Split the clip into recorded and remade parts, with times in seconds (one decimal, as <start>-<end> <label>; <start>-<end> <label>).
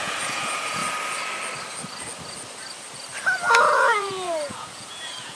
0.0-0.8 remade; 0.8-3.6 recorded; 3.6-5.3 remade